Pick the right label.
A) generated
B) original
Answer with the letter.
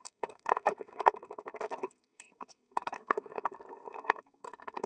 A